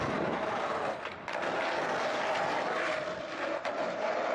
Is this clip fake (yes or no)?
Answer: no